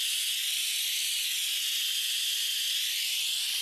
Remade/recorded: recorded